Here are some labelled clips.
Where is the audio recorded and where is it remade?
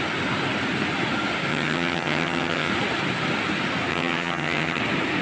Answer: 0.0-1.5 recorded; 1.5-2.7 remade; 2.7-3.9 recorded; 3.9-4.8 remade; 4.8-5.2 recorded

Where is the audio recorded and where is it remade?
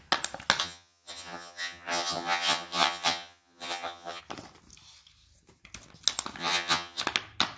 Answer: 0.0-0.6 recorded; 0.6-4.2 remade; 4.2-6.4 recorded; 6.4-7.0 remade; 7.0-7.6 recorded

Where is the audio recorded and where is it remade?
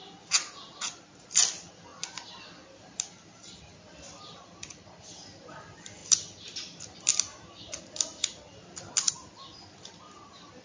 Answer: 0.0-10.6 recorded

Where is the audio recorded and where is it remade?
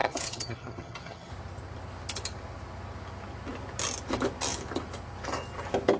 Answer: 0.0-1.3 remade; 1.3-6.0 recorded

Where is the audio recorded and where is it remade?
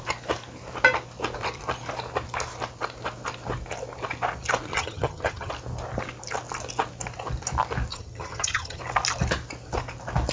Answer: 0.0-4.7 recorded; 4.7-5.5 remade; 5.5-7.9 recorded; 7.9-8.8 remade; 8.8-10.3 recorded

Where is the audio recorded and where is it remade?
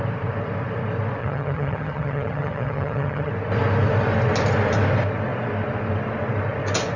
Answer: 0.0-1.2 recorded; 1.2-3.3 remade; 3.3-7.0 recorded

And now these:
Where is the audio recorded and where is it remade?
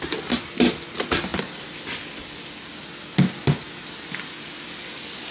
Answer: 0.0-5.3 recorded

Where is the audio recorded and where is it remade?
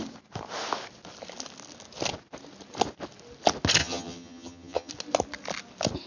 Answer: 0.0-3.8 recorded; 3.8-4.9 remade; 4.9-6.1 recorded